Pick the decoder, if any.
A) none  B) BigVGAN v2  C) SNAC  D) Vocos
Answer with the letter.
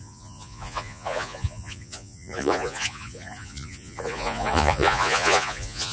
D